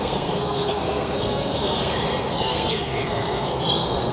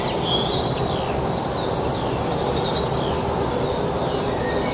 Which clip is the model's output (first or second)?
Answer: first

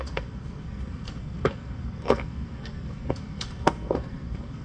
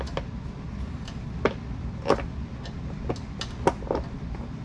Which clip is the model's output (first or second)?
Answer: first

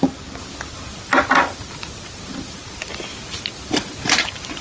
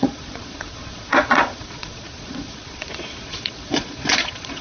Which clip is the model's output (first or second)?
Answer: second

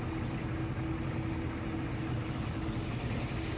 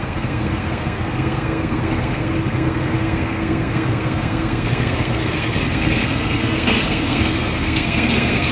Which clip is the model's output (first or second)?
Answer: second